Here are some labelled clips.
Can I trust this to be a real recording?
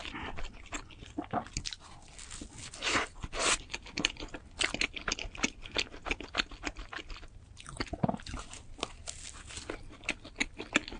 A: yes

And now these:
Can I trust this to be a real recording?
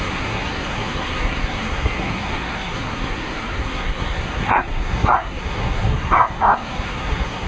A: no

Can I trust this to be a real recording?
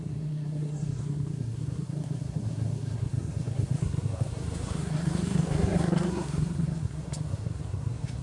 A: no